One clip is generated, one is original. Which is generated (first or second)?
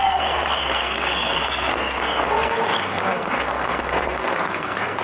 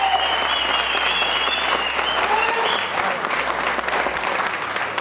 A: first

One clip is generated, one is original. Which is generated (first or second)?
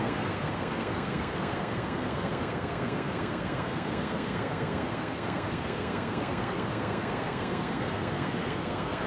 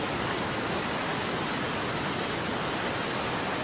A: first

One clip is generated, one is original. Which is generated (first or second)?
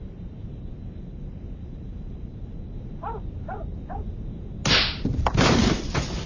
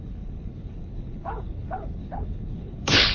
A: second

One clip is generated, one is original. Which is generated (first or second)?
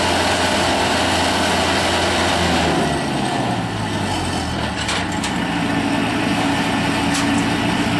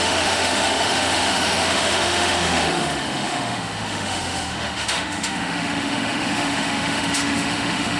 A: second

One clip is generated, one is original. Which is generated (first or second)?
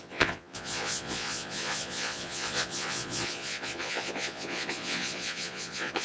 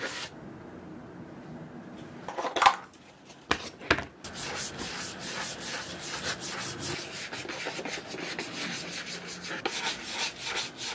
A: first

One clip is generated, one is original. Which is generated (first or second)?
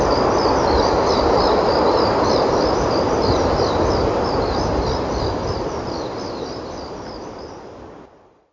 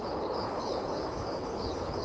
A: second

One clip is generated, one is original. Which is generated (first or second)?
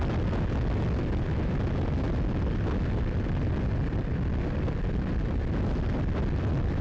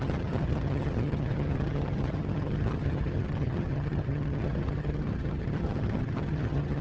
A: second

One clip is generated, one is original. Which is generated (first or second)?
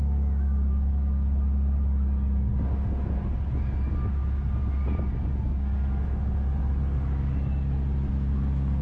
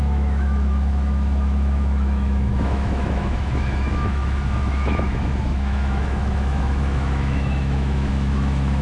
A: second